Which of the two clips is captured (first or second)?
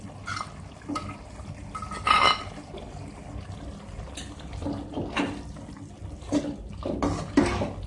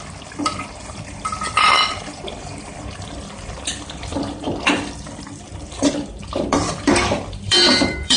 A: first